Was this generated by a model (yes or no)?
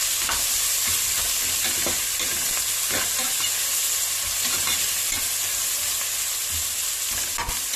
no